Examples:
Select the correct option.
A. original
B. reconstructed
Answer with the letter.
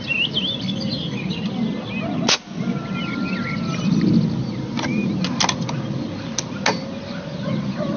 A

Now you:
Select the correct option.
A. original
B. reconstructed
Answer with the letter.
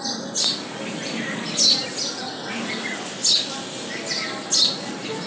A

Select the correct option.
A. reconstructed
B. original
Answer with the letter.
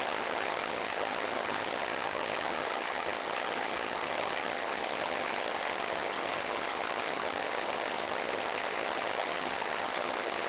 A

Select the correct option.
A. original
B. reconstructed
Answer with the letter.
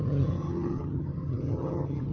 B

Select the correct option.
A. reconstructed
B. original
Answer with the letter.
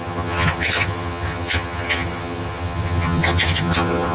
A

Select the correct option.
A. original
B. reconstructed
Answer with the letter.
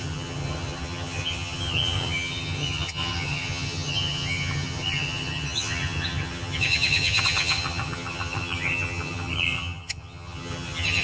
B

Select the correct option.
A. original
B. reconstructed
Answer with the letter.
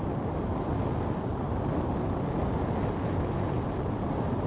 A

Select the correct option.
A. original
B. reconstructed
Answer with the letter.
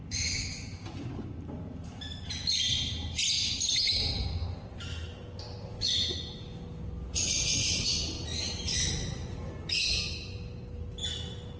A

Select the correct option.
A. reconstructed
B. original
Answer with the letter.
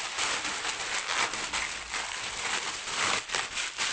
B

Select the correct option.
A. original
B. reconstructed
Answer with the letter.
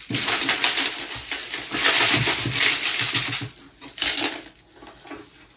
A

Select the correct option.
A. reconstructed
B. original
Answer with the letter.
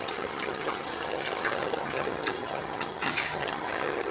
A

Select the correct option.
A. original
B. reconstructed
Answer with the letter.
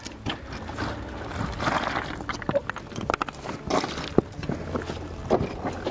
A